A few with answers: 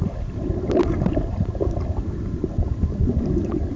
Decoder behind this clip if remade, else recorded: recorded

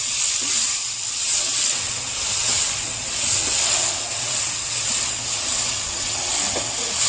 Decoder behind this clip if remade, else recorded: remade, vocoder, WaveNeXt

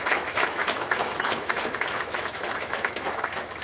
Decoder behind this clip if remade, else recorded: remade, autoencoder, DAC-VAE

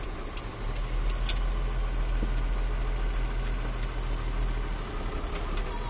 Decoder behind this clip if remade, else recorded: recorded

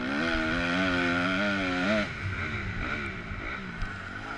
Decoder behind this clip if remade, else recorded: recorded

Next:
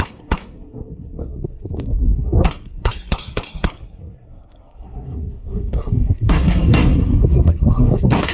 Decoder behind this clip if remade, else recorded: remade, codec, SNAC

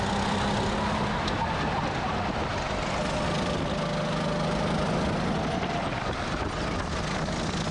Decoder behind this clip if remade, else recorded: recorded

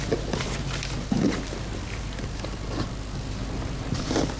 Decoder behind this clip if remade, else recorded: recorded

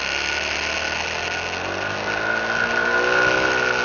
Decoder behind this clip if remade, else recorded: recorded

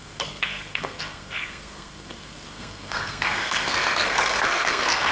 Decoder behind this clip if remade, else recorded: remade, codec, SNAC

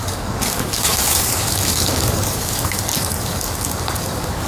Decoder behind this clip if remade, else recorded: remade, codec, DAC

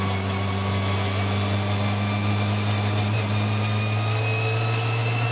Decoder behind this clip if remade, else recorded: recorded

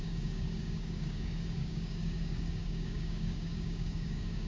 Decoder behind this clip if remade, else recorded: remade, codec, DAC